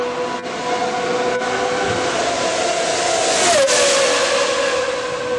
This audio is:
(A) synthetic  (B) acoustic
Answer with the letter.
B